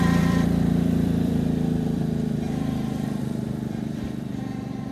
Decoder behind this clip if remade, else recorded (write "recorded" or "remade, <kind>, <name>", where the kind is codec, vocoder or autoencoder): remade, vocoder, BigVGAN v2